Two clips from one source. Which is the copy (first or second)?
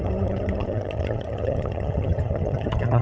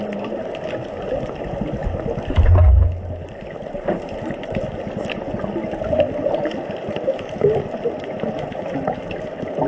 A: first